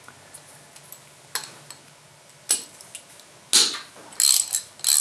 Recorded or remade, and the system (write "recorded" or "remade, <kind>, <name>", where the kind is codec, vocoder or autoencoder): recorded